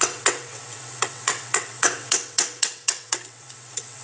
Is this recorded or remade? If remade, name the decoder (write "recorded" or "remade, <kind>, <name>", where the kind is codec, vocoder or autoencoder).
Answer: remade, vocoder, WaveNeXt